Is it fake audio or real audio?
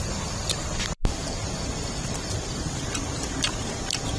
fake